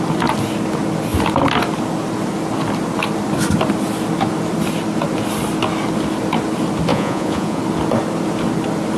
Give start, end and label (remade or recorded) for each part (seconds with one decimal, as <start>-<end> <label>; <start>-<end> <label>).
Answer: 0.0-6.9 recorded; 6.9-7.6 remade; 7.6-9.0 recorded

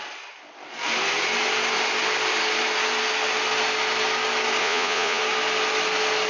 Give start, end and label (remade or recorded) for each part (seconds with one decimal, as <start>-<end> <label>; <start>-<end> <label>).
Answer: 0.0-4.6 recorded; 4.6-5.2 remade; 5.2-6.3 recorded

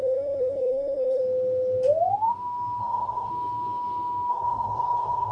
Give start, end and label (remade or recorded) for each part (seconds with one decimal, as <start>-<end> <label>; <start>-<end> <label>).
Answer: 0.0-1.2 remade; 1.2-2.8 recorded; 2.8-3.3 remade; 3.3-4.3 recorded; 4.3-5.3 remade

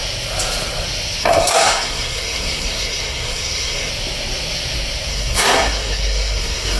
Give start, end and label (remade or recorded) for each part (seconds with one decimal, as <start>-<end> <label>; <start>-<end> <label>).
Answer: 0.0-1.2 recorded; 1.2-3.9 remade; 3.9-5.1 recorded; 5.1-6.8 remade

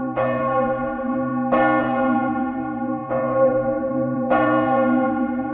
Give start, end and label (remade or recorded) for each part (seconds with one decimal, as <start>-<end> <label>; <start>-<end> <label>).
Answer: 0.0-1.3 remade; 1.3-1.8 recorded; 1.8-5.5 remade

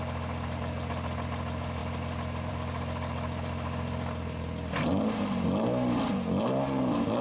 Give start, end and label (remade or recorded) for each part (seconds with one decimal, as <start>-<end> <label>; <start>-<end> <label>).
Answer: 0.0-7.2 recorded